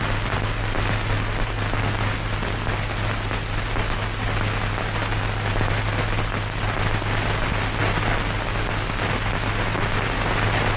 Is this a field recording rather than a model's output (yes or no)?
yes